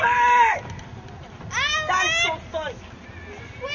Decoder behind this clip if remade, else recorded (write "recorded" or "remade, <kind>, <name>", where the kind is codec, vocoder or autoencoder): recorded